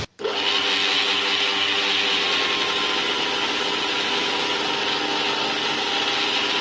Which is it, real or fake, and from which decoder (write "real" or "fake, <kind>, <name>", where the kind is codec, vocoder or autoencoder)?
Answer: real